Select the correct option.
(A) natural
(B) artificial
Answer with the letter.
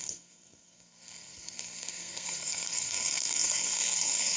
B